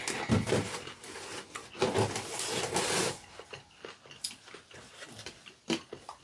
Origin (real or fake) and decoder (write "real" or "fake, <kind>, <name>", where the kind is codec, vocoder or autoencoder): real